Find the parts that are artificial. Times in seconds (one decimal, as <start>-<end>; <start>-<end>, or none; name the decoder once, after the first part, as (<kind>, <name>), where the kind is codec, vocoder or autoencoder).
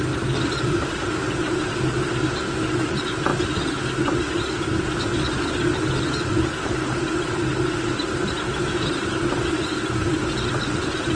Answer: none